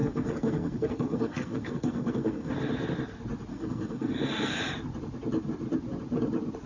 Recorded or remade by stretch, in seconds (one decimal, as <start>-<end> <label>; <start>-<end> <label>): 0.0-2.5 remade; 2.5-3.5 recorded; 3.5-4.6 remade; 4.6-6.7 recorded